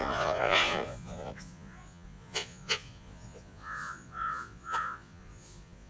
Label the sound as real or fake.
fake